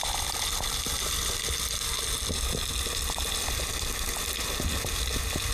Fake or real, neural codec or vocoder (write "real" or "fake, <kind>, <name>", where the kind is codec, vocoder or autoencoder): real